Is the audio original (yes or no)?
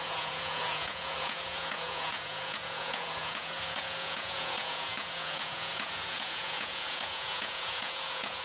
no